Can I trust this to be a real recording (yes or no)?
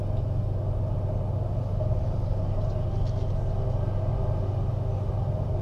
yes